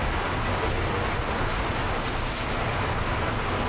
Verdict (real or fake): real